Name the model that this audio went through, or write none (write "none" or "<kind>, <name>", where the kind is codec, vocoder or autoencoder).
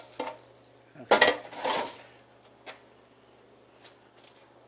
none